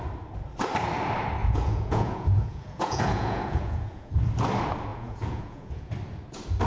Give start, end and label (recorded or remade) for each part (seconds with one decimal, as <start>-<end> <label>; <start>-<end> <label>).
0.0-1.4 recorded; 1.4-4.1 remade; 4.1-4.9 recorded; 4.9-5.9 remade; 5.9-6.7 recorded